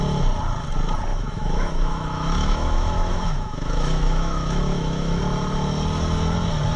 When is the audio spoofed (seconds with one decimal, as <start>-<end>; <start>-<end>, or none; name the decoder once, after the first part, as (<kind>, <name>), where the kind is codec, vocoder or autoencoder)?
1.1-5.2 (autoencoder, DAC-VAE)